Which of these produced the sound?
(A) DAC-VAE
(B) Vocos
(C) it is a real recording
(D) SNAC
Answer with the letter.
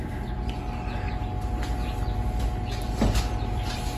C